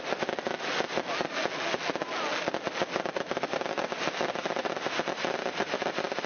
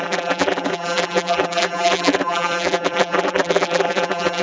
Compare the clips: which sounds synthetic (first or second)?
second